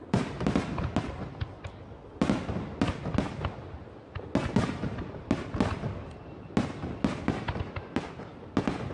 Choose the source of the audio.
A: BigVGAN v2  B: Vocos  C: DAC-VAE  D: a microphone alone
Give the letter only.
D